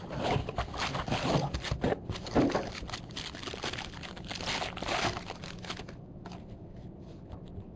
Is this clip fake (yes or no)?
no